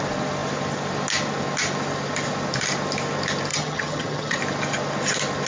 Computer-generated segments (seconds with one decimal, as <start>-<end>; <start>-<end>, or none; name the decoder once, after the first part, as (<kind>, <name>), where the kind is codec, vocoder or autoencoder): 3.5-4.4 (vocoder, HiFi-GAN)